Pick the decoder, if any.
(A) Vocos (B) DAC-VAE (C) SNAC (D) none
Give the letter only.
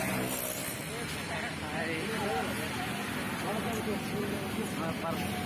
D